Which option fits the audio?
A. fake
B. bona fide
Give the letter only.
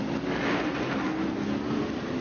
B